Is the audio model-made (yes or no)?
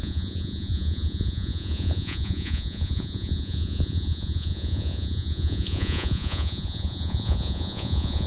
yes